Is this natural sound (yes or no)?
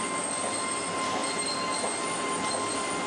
yes